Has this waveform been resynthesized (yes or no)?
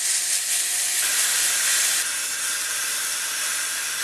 no